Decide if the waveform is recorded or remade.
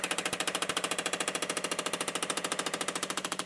remade